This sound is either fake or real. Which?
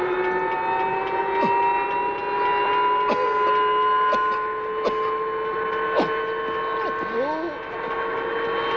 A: real